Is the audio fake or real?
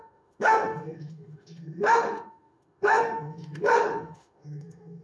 fake